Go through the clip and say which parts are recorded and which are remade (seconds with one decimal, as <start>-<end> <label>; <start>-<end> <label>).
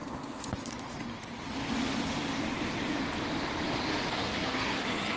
0.0-4.1 recorded; 4.1-5.2 remade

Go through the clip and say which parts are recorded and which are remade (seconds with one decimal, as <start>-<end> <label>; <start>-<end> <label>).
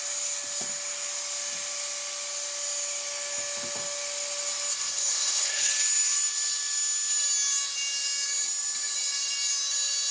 0.0-4.7 recorded; 4.7-5.7 remade; 5.7-10.1 recorded